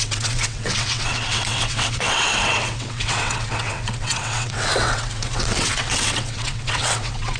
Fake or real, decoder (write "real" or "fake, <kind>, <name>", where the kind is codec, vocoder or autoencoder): fake, vocoder, WaveNeXt